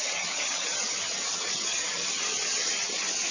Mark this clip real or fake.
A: fake